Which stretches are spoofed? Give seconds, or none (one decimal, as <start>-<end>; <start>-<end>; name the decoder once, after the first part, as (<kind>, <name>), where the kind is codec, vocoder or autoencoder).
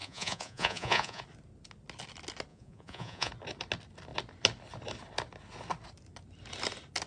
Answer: 0.0-1.2 (vocoder, Vocos); 2.5-3.3